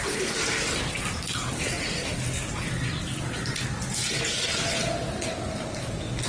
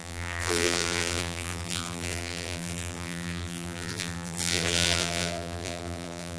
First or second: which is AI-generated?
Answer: second